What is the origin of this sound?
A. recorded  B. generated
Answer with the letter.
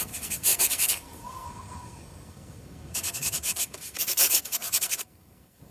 B